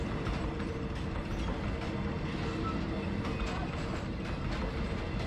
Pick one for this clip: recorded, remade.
recorded